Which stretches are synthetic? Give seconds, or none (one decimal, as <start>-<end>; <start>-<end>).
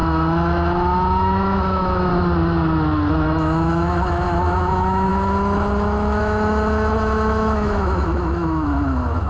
0.0-2.1; 3.1-9.3